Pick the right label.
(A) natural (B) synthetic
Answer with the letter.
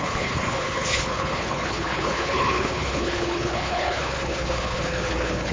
B